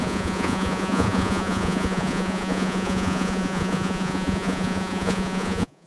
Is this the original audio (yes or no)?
no